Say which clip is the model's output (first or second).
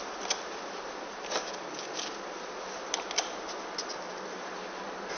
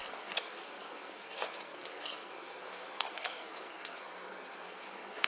second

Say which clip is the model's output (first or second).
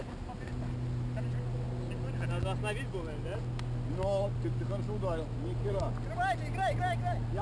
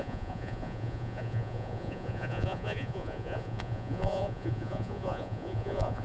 second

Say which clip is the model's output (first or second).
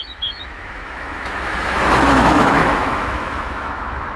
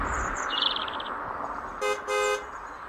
first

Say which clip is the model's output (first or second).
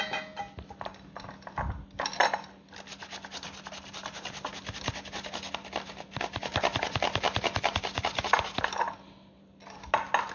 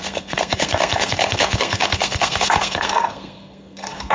second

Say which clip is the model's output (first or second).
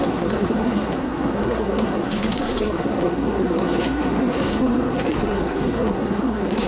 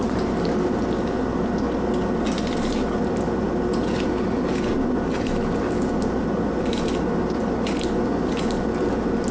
first